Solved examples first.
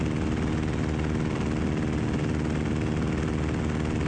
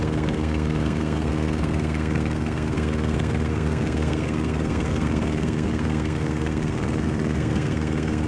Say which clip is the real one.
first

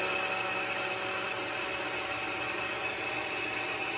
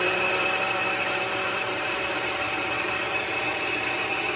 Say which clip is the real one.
first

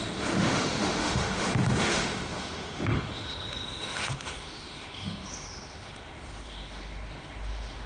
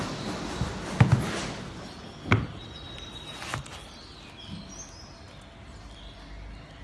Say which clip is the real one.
second